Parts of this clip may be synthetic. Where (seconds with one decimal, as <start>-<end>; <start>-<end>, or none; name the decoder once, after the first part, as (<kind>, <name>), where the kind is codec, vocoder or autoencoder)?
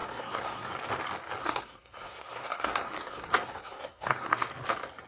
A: 0.0-0.7 (codec, SNAC); 1.4-4.5